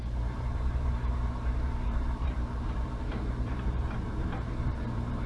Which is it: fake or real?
fake